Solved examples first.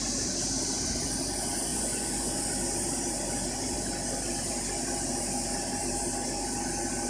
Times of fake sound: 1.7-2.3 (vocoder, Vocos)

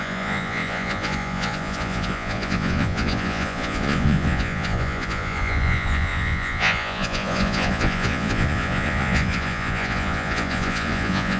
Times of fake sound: 0.0-11.4 (vocoder, Vocos)

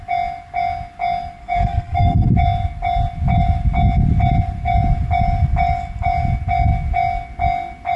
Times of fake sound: 1.4-2.3 (codec, SNAC)

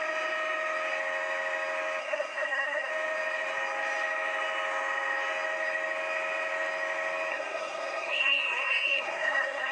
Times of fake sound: 2.0-2.9 (codec, SNAC); 7.3-9.7

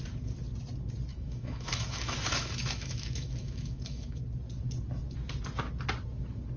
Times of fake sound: 1.1-4.2 (autoencoder, DAC-VAE)

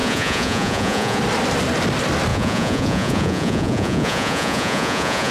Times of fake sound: 0.0-1.2 (vocoder, Vocos); 2.3-5.3